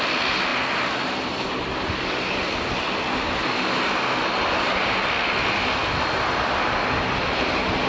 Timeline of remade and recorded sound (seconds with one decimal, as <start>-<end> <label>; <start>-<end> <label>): 0.0-7.9 recorded